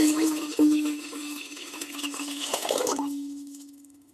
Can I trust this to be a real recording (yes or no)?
no